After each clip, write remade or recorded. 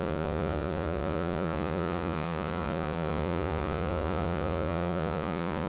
remade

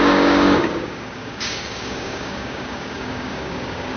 remade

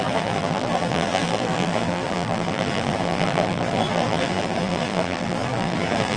remade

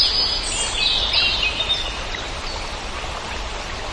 recorded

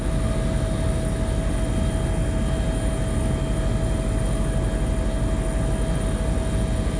recorded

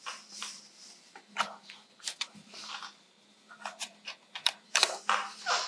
remade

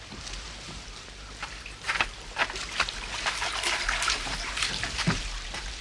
remade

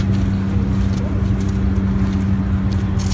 recorded